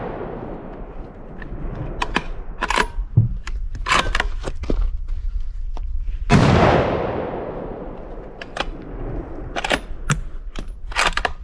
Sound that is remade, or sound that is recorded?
recorded